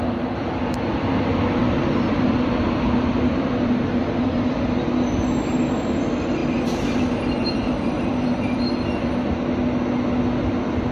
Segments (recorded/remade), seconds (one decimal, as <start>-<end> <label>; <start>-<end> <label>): 0.0-1.6 recorded; 1.6-4.1 remade; 4.1-6.4 recorded; 6.4-8.6 remade; 8.6-10.9 recorded